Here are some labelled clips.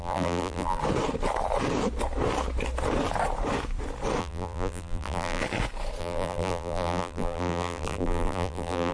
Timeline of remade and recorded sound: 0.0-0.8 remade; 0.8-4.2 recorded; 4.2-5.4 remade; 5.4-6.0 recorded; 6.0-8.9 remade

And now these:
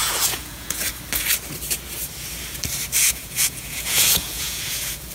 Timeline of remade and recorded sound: 0.0-0.9 remade; 0.9-3.0 recorded; 3.0-5.1 remade

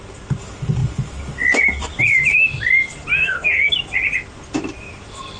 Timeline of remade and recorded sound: 0.0-3.2 recorded; 3.2-3.7 remade; 3.7-5.4 recorded